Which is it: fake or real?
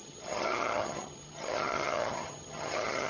fake